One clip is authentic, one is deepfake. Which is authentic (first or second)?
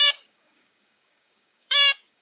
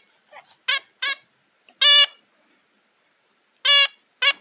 second